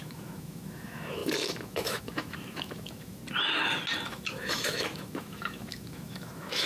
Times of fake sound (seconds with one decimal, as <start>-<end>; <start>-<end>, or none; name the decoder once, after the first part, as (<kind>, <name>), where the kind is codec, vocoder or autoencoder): 0.0-3.2 (autoencoder, DAC-VAE); 4.1-6.7